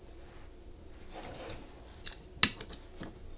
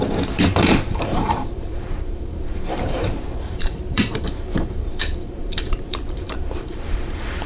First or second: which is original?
first